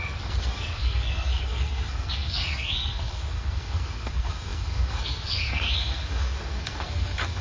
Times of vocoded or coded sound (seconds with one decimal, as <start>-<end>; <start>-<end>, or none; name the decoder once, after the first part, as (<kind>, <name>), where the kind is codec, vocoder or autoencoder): 0.0-7.4 (codec, SNAC)